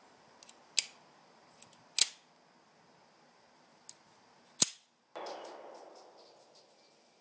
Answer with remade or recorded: recorded